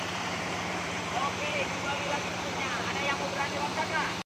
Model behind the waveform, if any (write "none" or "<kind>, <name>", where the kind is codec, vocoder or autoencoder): vocoder, BigVGAN v2